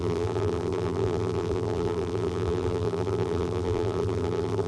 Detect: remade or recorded remade